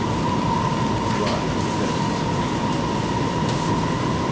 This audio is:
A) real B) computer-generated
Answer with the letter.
A